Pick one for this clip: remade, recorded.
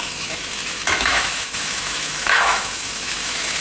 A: remade